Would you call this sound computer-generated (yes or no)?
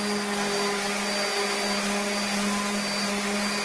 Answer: no